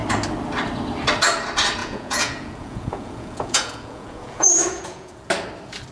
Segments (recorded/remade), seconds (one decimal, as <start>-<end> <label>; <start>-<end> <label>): 0.0-1.8 recorded; 1.8-5.3 remade; 5.3-5.9 recorded